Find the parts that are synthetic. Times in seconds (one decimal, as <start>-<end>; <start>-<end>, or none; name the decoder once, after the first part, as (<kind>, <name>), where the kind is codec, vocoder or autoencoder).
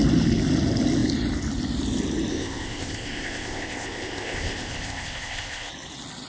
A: 2.3-5.7 (codec, ZipCodec)